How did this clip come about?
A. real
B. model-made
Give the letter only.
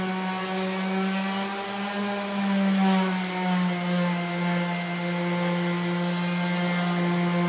A